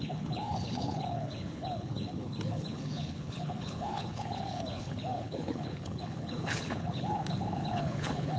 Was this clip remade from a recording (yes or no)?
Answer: yes